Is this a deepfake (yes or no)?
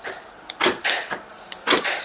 no